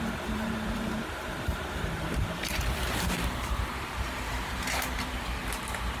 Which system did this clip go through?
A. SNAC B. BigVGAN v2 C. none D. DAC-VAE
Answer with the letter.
B